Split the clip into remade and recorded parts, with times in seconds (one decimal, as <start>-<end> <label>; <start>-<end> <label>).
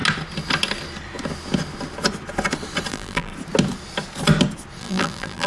0.0-2.9 recorded; 2.9-3.3 remade; 3.3-4.8 recorded; 4.8-5.5 remade